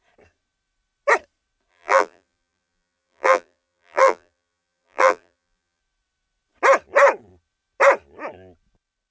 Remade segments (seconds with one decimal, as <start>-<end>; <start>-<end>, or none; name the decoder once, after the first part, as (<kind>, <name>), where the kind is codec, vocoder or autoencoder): 1.7-5.8 (vocoder, BigVGAN v2)